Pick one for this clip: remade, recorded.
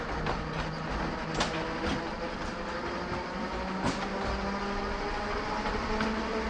recorded